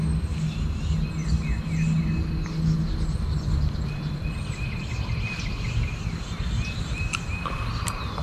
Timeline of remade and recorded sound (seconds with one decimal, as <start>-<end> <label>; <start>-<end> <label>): 0.0-8.2 recorded